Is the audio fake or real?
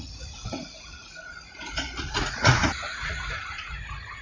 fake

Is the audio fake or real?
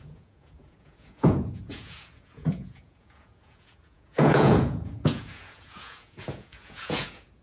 fake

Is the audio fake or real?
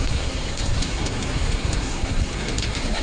fake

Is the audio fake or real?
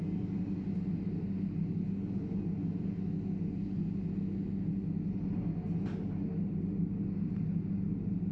real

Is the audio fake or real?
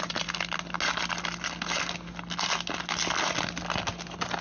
real